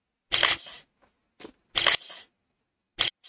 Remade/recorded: recorded